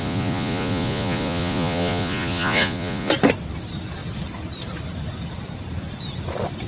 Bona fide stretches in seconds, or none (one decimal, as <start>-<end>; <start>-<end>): 3.1-6.7